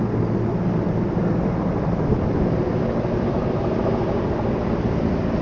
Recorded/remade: recorded